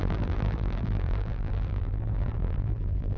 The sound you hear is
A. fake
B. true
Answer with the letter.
A